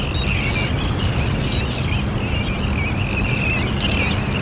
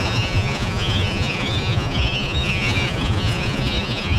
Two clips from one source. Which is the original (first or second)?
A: first